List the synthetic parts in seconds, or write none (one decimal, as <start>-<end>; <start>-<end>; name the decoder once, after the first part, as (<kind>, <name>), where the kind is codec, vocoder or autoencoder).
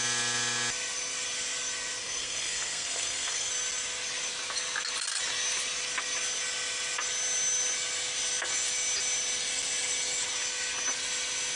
2.0-3.5 (codec, SNAC)